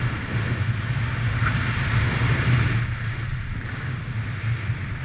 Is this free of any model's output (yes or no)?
yes